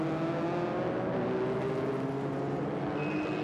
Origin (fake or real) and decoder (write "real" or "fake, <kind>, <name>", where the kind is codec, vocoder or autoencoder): real